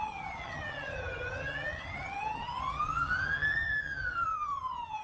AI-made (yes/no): yes